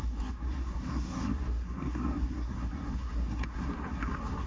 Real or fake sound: fake